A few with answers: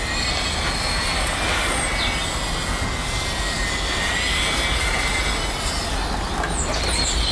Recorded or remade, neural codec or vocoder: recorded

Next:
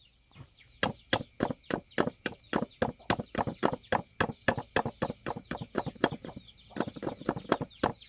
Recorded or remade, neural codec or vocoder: recorded